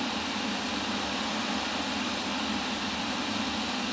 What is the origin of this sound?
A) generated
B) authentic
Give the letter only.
B